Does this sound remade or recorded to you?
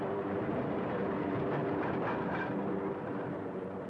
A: remade